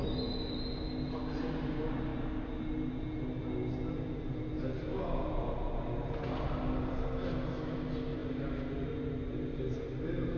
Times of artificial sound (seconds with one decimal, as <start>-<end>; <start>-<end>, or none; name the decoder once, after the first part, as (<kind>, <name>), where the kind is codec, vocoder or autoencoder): none